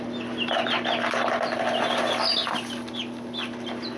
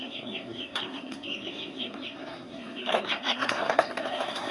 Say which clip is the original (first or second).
first